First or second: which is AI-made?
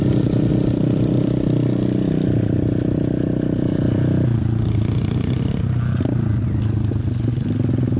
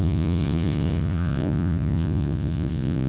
second